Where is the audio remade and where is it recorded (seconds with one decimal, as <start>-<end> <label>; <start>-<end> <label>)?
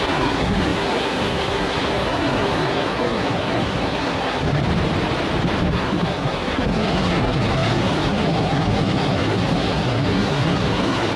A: 0.0-4.6 remade; 4.6-5.6 recorded; 5.6-11.2 remade